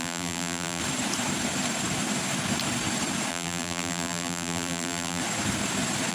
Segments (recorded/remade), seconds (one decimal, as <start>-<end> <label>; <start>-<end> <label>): 0.0-0.8 remade; 0.8-3.3 recorded; 3.3-5.2 remade; 5.2-6.1 recorded